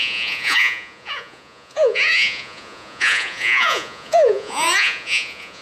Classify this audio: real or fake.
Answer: fake